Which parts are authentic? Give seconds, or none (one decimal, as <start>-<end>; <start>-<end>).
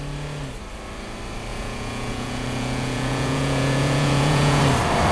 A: 0.0-1.5; 4.6-5.1